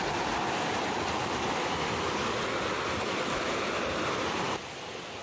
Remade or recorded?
recorded